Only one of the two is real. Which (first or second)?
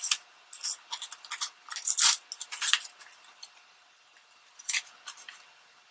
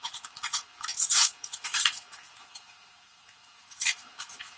first